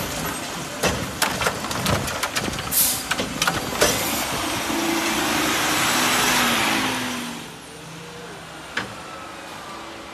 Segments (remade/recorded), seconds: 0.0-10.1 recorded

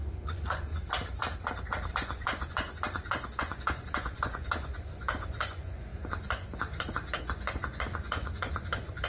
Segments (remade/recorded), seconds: 0.0-0.7 remade; 0.7-1.9 recorded; 1.9-9.1 remade

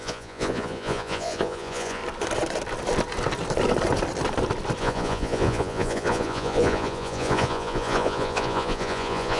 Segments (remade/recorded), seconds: 0.0-2.0 remade; 2.0-4.8 recorded; 4.8-9.4 remade